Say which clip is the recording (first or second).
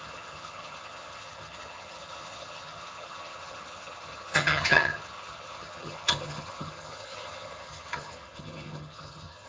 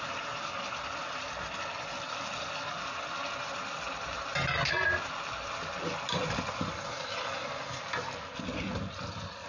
second